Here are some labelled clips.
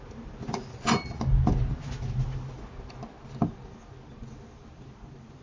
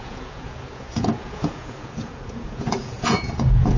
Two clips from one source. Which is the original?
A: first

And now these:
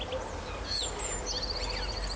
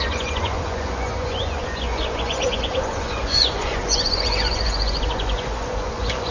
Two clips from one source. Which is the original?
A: first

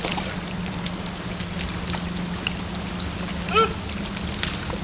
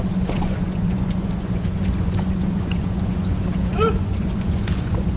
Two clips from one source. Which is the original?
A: first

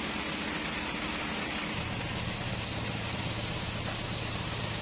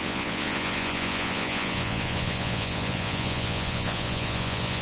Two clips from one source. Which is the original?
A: first